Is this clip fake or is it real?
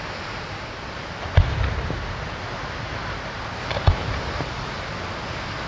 real